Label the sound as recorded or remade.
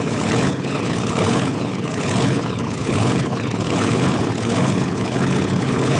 remade